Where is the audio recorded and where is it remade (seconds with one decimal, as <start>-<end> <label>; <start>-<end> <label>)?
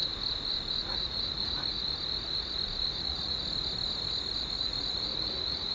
0.0-0.7 recorded; 0.7-1.8 remade; 1.8-2.9 recorded; 2.9-3.4 remade; 3.4-4.6 recorded; 4.6-5.7 remade